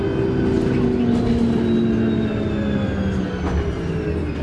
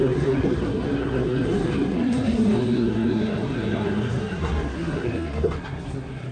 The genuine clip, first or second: first